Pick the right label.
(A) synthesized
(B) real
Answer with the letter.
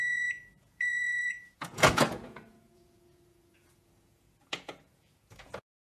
A